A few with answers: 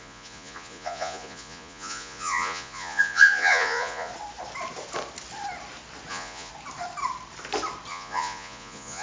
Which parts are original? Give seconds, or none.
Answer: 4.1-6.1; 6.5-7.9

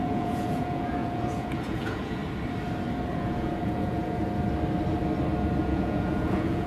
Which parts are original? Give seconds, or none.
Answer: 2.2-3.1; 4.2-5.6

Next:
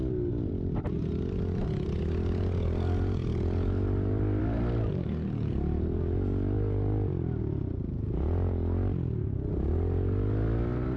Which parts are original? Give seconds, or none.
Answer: 0.0-11.0

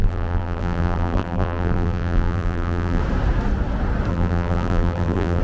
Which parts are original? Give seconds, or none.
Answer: 3.0-4.1

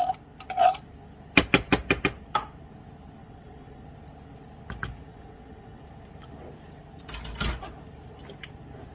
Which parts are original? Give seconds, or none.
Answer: 0.0-3.2; 3.8-5.1; 5.8-8.9